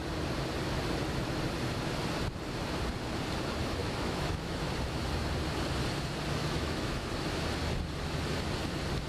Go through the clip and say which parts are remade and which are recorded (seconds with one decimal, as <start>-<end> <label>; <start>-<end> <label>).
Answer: 0.0-3.8 recorded; 3.8-4.7 remade; 4.7-6.4 recorded; 6.4-7.1 remade; 7.1-9.1 recorded